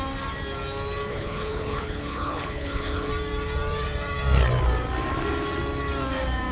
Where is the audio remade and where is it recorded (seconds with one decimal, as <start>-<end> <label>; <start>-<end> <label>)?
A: 0.0-1.1 recorded; 1.1-3.1 remade; 3.1-6.5 recorded